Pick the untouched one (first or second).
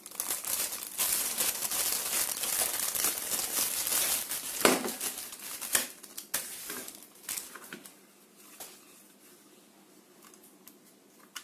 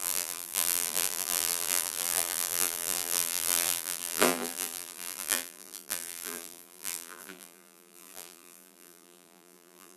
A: first